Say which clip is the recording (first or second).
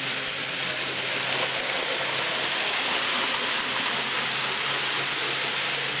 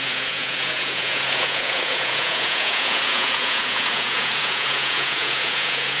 first